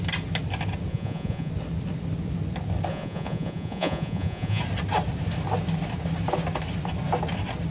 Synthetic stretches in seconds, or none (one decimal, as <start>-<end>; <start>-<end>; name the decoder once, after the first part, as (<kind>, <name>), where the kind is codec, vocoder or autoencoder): 0.9-1.5 (vocoder, Vocos); 2.9-4.6